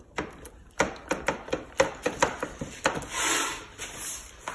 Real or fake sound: real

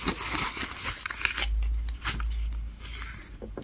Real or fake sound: real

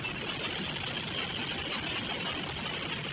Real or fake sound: real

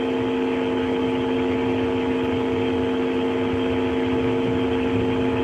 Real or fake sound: real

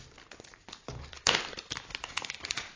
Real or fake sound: fake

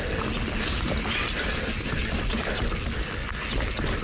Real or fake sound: real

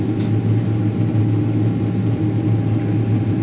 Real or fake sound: real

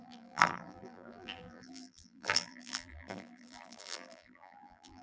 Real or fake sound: fake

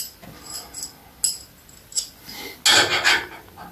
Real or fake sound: real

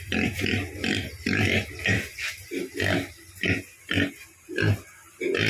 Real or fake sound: real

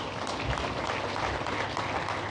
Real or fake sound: real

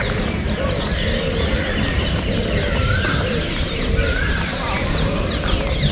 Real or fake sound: real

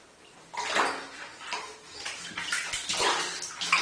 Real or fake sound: real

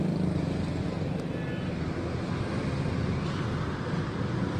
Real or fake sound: real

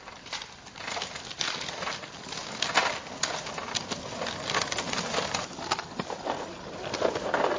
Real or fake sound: real